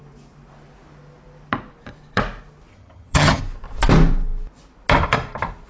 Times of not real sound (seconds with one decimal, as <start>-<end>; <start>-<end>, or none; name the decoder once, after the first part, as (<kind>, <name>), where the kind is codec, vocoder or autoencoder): 2.7-3.4 (vocoder, HiFi-GAN)